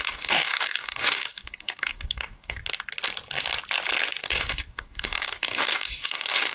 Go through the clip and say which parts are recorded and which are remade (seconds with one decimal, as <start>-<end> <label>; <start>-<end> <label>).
0.0-2.6 remade; 2.6-4.2 recorded; 4.2-6.5 remade